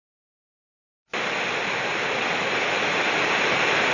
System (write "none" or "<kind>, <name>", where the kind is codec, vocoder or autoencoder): none